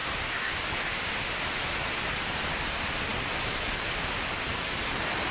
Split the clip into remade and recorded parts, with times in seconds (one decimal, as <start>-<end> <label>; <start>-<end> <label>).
0.0-5.3 recorded